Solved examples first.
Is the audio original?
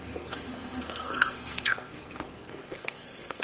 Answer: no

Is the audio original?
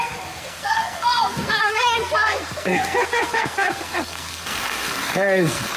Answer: no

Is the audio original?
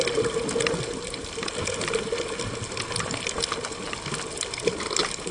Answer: yes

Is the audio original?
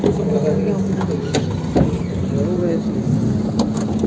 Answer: yes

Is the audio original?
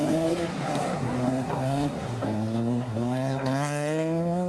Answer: no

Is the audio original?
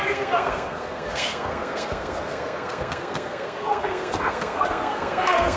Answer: no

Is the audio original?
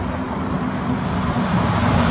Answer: yes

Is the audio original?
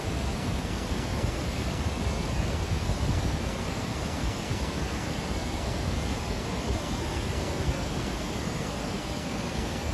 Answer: no